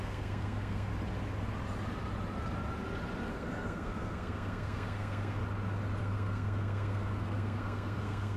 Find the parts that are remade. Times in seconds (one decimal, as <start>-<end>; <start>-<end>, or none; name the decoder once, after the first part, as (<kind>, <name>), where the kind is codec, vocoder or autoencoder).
0.0-0.9 (codec, SNAC); 3.3-5.4; 6.0-8.4